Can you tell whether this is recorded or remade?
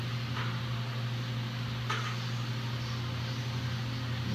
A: recorded